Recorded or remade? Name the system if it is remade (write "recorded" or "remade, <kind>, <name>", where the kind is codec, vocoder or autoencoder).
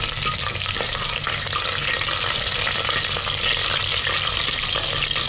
recorded